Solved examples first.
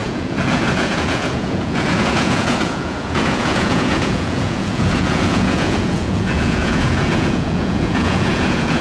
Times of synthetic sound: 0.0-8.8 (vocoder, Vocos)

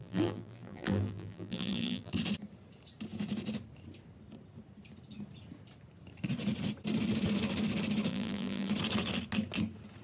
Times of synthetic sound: 0.0-2.1 (vocoder, BigVGAN v2); 8.1-8.7

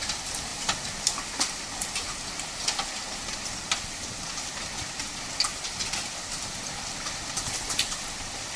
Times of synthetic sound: none

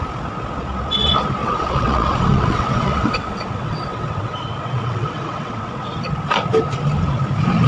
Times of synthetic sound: 1.4-6.0 (vocoder, WaveNeXt)